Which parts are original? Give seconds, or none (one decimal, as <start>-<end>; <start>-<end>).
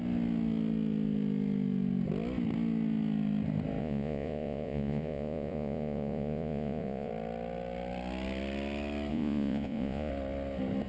0.0-3.8; 7.1-9.1; 10.1-10.9